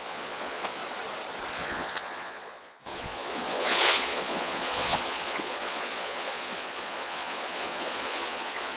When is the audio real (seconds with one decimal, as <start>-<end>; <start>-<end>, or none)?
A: 0.8-1.5